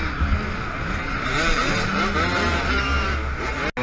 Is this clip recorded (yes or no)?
yes